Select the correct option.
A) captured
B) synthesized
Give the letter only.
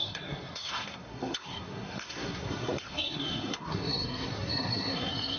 B